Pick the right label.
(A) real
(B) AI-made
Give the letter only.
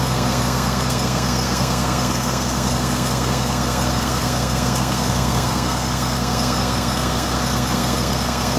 B